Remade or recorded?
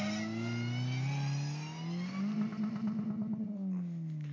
recorded